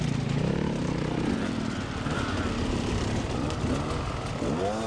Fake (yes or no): no